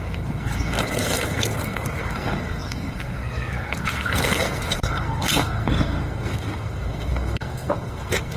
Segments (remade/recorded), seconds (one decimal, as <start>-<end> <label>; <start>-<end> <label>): 0.0-8.4 remade